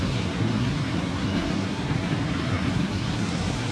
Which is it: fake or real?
fake